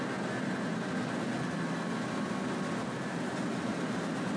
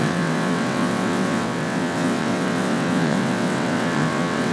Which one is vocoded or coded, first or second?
second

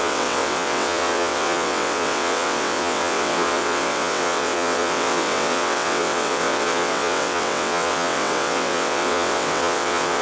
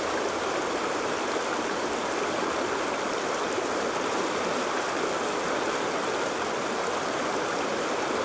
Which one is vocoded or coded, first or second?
first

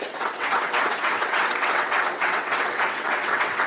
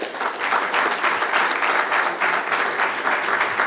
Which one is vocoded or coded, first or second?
first